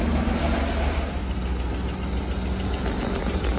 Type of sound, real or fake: real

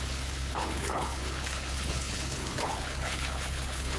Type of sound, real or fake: fake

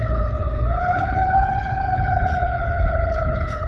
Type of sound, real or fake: fake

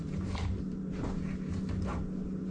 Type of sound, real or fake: real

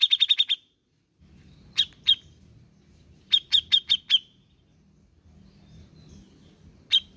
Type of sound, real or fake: real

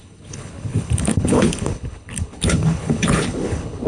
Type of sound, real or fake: fake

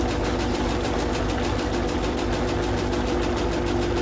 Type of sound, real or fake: real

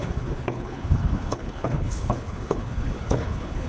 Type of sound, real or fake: fake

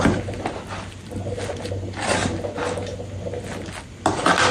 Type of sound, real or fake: real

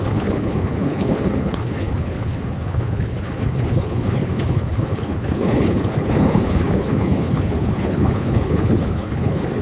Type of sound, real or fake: fake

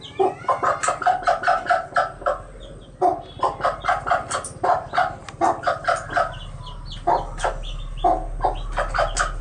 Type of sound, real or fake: real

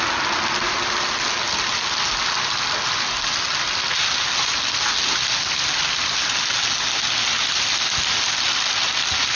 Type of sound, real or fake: real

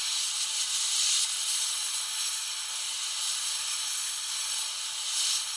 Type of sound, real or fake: real